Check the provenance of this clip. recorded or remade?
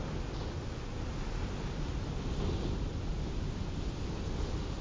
recorded